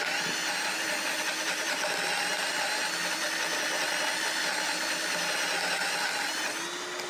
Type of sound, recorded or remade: recorded